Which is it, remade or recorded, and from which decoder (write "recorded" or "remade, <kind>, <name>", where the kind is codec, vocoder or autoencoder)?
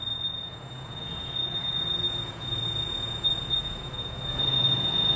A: remade, vocoder, Vocos